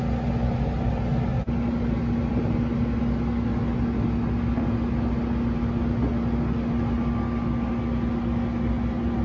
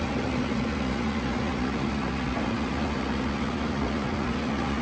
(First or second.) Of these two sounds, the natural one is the first